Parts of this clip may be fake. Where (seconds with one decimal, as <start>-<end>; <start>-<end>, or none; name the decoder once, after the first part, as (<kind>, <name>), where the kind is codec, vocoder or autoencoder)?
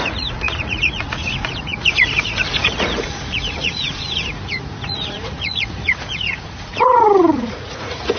0.0-8.2 (vocoder, Vocos)